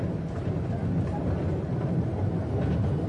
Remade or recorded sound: recorded